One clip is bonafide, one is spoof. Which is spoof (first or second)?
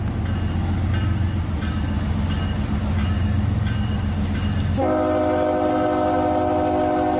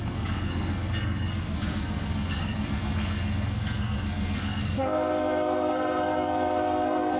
second